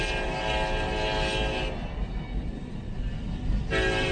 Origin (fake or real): real